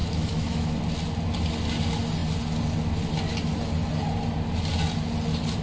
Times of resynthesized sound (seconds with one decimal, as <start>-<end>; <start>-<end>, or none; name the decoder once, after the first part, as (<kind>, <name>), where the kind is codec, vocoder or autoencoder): 0.0-0.8 (autoencoder, DAC-VAE)